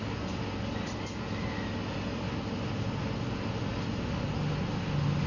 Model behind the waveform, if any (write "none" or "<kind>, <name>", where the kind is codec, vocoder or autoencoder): none